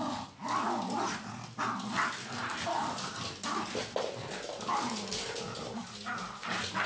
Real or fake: real